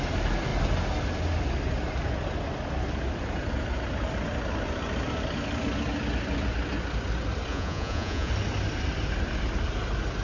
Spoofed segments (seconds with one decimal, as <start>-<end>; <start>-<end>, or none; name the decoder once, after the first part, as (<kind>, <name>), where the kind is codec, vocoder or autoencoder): 7.5-8.3 (vocoder, Vocos)